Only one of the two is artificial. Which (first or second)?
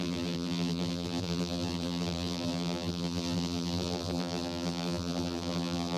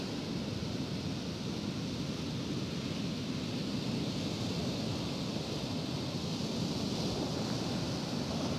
first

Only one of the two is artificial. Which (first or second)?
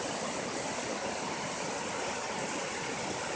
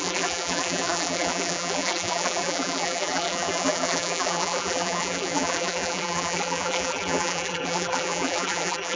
second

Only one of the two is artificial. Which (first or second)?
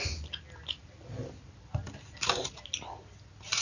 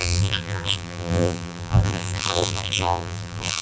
second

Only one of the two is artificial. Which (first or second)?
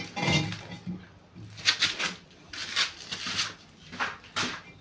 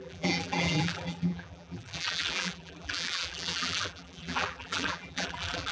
second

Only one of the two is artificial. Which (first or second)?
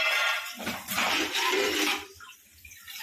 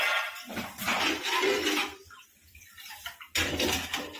first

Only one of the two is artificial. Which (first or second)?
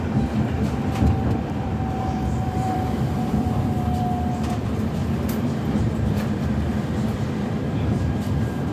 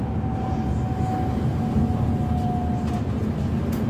first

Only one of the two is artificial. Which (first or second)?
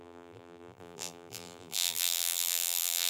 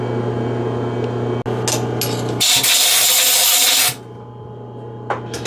first